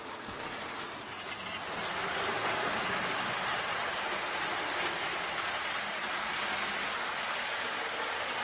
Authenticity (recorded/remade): recorded